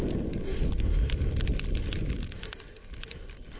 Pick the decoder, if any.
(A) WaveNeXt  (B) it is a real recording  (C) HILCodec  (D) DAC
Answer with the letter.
B